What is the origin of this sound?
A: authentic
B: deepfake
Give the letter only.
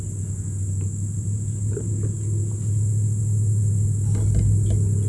A